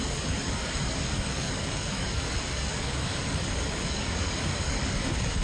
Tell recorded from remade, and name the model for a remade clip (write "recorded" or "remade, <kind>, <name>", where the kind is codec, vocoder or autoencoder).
remade, codec, DAC